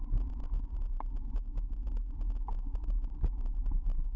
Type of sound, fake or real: real